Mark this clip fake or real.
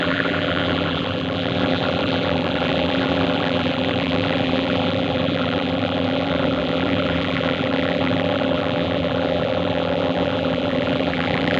fake